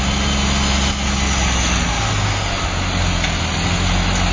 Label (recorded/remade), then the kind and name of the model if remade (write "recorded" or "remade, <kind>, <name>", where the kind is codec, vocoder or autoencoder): recorded